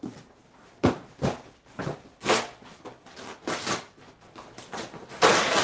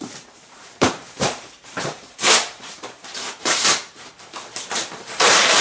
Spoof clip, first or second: second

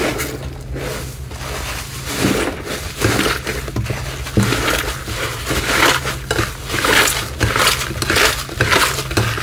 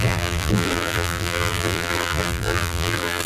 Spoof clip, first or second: second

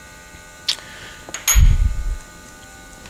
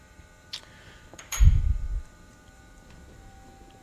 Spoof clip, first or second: second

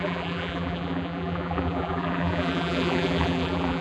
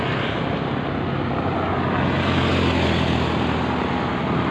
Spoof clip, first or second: first